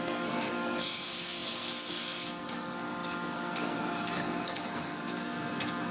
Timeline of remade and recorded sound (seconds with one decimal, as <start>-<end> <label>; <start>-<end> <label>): 0.0-5.9 remade